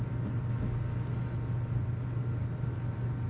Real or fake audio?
real